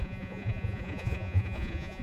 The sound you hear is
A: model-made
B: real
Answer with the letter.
A